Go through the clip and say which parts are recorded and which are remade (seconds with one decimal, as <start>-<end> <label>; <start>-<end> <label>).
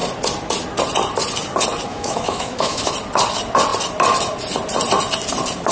0.0-1.9 recorded; 1.9-2.9 remade; 2.9-5.7 recorded